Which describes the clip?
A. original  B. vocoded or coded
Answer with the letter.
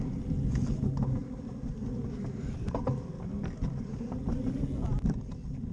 A